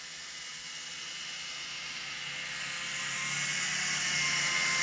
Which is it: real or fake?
real